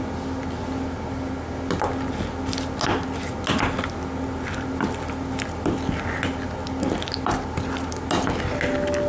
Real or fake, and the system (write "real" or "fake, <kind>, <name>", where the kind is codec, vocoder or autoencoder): real